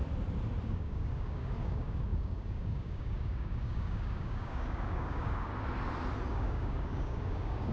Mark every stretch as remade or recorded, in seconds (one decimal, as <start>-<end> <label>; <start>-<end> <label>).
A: 0.0-0.7 recorded; 0.7-5.5 remade; 5.5-6.3 recorded; 6.3-7.7 remade

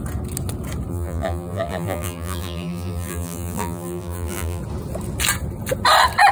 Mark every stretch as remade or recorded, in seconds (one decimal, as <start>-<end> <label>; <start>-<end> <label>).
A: 0.0-0.9 recorded; 0.9-4.6 remade; 4.6-6.3 recorded

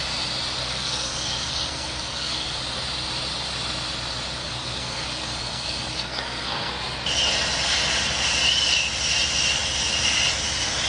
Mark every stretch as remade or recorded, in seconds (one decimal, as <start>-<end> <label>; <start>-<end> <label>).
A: 0.0-0.6 recorded; 0.6-2.6 remade; 2.6-4.4 recorded; 4.4-6.7 remade; 6.7-10.9 recorded

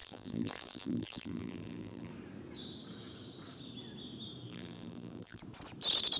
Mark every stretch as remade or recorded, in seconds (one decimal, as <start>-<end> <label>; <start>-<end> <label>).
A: 0.0-2.1 remade; 2.1-4.5 recorded; 4.5-5.4 remade; 5.4-6.2 recorded

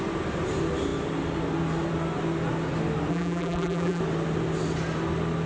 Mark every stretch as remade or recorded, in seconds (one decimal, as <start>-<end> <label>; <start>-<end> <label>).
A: 0.0-3.1 recorded; 3.1-4.0 remade; 4.0-5.5 recorded